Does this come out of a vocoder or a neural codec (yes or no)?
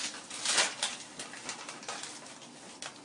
no